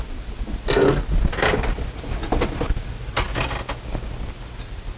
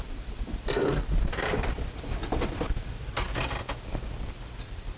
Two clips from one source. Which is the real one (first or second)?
first